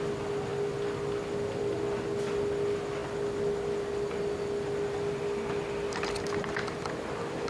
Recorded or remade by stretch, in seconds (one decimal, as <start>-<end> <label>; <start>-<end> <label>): 0.0-7.5 recorded